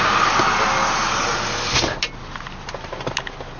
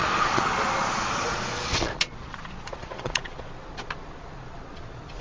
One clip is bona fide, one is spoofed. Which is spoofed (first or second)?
second